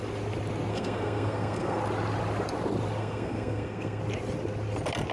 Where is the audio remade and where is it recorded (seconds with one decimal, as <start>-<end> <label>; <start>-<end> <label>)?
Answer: 0.0-0.7 recorded; 0.7-1.8 remade; 1.8-3.0 recorded; 3.0-4.0 remade; 4.0-5.1 recorded

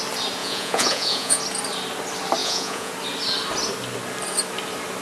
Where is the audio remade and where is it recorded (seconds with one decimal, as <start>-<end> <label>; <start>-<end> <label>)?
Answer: 0.0-0.4 recorded; 0.4-1.4 remade; 1.4-2.4 recorded; 2.4-2.9 remade; 2.9-5.0 recorded

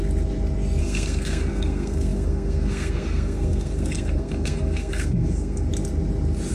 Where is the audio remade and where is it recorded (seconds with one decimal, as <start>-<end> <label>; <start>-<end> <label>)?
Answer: 0.0-0.8 recorded; 0.8-5.7 remade; 5.7-6.5 recorded